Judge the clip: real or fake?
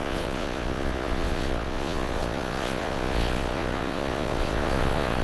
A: fake